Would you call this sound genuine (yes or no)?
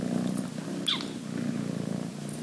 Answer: yes